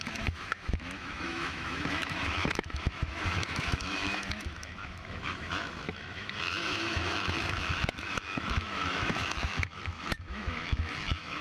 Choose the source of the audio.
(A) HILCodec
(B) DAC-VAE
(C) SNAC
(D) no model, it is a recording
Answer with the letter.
B